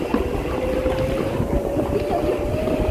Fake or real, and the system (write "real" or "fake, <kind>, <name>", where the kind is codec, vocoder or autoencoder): real